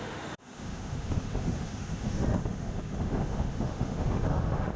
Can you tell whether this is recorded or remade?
remade